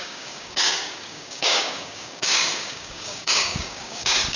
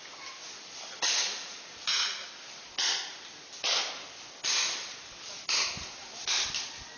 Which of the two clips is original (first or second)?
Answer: second